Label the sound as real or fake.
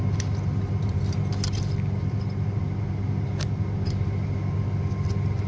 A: real